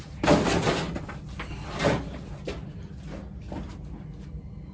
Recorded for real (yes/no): yes